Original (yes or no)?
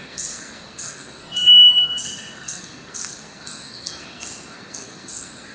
no